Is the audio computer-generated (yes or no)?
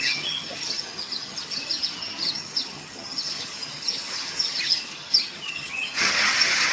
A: yes